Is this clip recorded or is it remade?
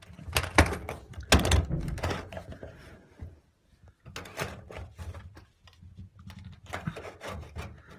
recorded